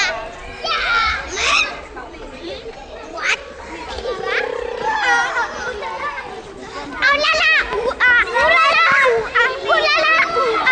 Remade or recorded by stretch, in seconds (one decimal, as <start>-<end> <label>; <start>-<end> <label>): 0.0-1.0 recorded; 1.0-3.7 remade; 3.7-10.7 recorded